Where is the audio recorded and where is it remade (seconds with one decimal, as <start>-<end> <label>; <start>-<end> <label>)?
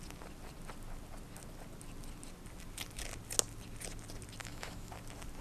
0.0-4.4 recorded; 4.4-4.9 remade; 4.9-5.4 recorded